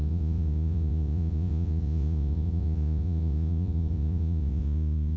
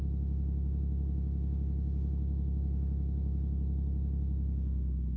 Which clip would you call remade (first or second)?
first